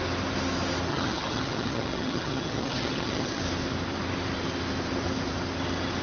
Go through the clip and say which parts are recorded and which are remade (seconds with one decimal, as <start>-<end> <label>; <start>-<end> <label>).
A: 0.0-0.9 recorded; 0.9-3.4 remade; 3.4-6.0 recorded